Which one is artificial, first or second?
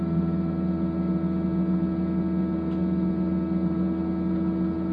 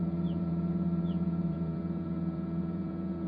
second